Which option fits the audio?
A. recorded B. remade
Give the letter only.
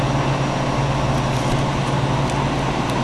A